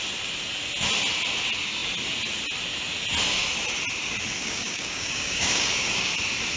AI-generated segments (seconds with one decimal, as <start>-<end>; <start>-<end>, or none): 4.4-6.1